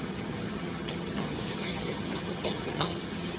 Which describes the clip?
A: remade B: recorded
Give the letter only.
A